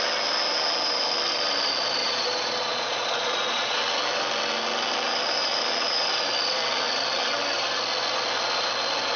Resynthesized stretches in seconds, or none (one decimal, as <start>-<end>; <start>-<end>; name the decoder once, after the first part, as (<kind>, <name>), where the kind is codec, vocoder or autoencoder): 2.0-3.8 (vocoder, Vocos)